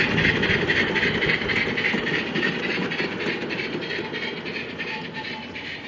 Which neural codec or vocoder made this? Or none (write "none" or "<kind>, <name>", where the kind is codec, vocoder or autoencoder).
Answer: none